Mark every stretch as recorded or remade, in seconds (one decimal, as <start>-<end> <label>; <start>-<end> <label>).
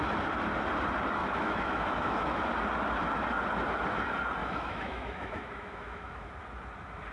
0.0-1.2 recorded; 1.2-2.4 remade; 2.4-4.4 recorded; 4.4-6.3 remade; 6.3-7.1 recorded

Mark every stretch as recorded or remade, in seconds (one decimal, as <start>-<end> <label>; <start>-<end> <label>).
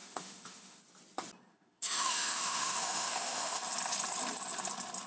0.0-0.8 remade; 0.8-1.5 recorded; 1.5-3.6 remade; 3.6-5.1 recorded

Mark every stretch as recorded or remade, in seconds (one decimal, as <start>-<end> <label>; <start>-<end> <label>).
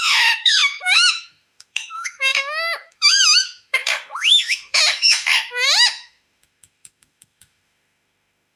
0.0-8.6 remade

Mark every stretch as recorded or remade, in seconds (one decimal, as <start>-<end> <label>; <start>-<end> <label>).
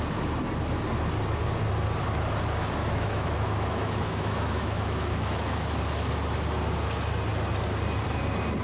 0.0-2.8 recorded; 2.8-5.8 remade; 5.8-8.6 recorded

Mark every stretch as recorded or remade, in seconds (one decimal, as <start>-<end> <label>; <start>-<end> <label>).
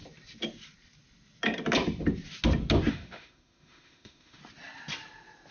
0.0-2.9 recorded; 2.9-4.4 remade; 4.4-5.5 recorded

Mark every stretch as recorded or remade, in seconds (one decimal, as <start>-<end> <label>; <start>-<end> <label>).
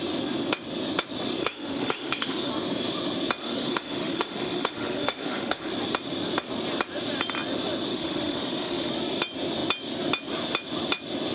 0.0-1.4 recorded; 1.4-2.5 remade; 2.5-3.4 recorded; 3.4-5.7 remade; 5.7-7.9 recorded; 7.9-8.9 remade; 8.9-11.3 recorded